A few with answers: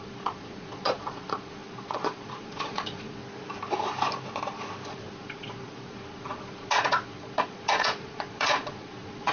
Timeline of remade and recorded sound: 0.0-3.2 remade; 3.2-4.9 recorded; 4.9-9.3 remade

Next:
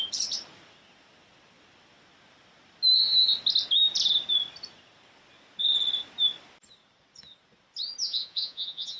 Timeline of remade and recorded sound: 0.0-8.0 recorded; 8.0-9.0 remade

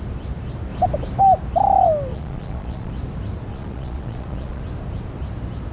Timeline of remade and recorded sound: 0.0-2.1 recorded; 2.1-2.9 remade; 2.9-3.5 recorded; 3.5-4.6 remade; 4.6-5.7 recorded

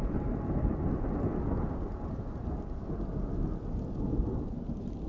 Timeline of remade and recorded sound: 0.0-5.1 recorded

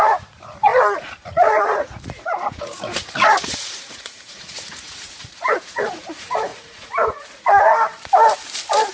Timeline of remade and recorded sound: 0.0-7.7 remade; 7.7-8.9 recorded